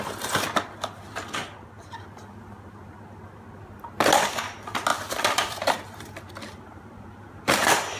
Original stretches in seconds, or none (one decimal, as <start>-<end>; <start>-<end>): 0.0-1.4; 1.9-4.9